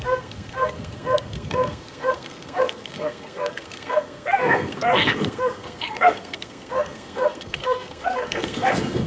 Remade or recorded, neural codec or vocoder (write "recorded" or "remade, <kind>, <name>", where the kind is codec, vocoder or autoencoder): remade, codec, SNAC